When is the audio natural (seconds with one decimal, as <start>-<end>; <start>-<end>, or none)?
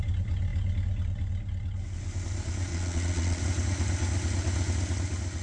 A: 0.0-2.7; 3.4-5.4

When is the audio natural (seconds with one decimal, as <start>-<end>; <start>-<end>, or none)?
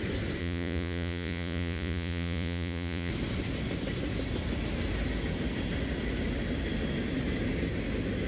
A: 0.0-0.4; 3.1-8.3